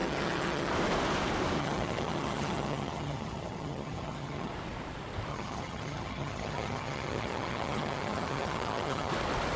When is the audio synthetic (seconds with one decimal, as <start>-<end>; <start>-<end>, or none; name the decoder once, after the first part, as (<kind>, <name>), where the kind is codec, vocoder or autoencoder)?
0.0-0.7 (vocoder, HiFi-GAN); 1.6-4.5; 5.3-9.1